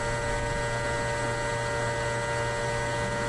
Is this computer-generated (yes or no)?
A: no